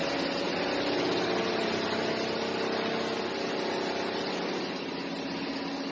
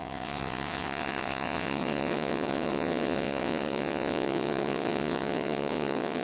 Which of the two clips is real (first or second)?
first